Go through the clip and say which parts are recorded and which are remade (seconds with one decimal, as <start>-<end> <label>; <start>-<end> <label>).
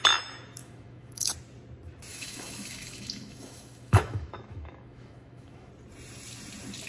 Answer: 0.0-0.6 recorded; 0.6-1.3 remade; 1.3-2.1 recorded; 2.1-5.7 remade; 5.7-6.9 recorded